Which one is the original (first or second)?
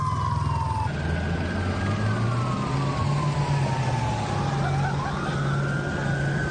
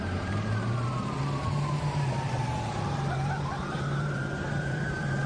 first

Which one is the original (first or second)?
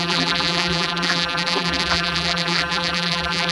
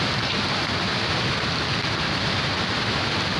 second